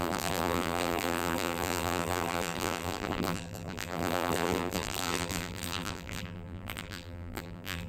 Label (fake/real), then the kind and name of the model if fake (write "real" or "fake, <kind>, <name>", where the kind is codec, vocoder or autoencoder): fake, vocoder, BigVGAN v2